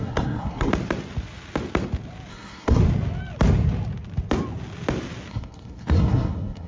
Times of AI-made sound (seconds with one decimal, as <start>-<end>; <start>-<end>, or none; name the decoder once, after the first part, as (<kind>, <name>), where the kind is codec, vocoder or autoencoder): 0.0-0.7 (codec, SNAC); 2.3-2.8; 5.3-6.7